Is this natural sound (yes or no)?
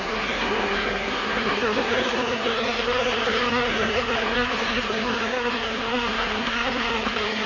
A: no